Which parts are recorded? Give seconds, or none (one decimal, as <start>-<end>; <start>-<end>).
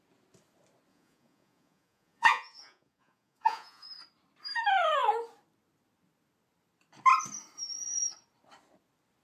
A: 0.0-0.9; 3.9-9.2